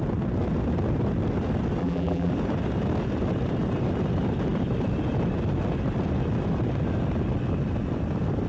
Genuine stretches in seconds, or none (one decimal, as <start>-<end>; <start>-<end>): 0.0-1.8; 2.3-8.5